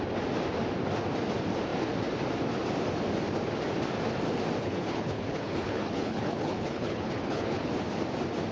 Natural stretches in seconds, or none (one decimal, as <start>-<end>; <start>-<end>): 0.0-4.6; 7.7-8.5